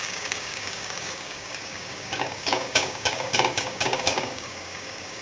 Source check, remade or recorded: remade